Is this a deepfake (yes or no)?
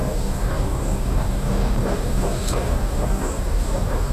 yes